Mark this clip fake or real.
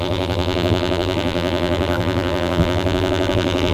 fake